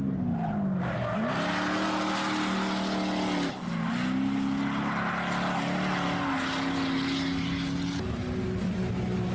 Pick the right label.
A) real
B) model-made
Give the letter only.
A